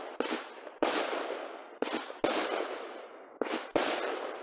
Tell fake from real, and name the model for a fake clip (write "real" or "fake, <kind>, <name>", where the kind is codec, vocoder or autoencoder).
real